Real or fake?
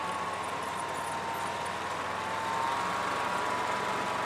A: real